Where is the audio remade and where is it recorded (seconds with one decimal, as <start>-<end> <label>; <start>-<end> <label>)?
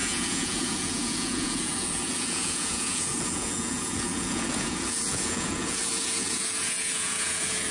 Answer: 0.0-7.7 remade